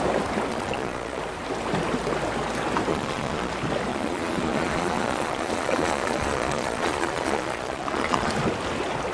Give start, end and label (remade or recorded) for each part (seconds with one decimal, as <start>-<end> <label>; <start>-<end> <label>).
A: 0.0-0.5 recorded; 0.5-1.2 remade; 1.2-2.9 recorded; 2.9-3.5 remade; 3.5-3.9 recorded; 3.9-8.3 remade; 8.3-9.1 recorded